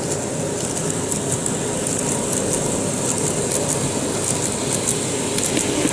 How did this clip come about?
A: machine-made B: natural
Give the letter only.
B